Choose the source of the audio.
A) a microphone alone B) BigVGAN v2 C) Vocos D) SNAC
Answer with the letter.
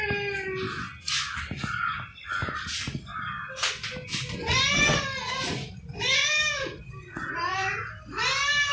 A